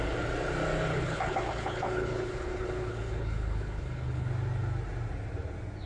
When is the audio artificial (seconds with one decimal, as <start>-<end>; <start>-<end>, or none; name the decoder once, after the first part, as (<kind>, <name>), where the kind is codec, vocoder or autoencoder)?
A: 0.9-4.3 (codec, HILCodec)